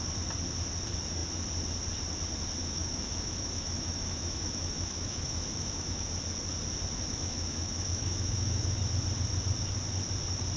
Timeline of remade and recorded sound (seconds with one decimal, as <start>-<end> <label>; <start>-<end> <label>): 0.0-2.6 recorded; 2.6-6.1 remade; 6.1-7.1 recorded; 7.1-8.8 remade; 8.8-10.6 recorded